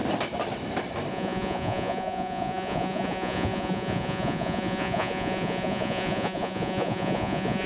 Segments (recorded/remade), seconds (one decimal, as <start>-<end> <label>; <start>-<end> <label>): 0.0-1.1 recorded; 1.1-7.7 remade